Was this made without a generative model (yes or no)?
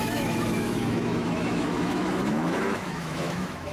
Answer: no